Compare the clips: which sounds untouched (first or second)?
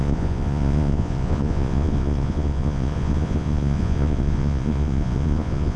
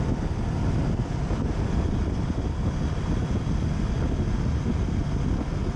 second